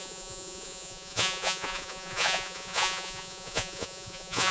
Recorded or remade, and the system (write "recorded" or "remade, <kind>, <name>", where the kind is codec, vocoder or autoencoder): remade, vocoder, Vocos